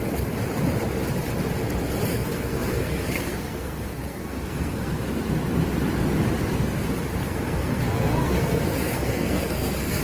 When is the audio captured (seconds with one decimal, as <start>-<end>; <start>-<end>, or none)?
0.0-2.1; 5.0-7.2